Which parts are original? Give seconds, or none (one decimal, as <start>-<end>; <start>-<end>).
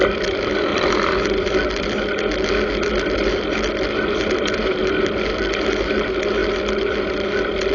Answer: 0.0-7.7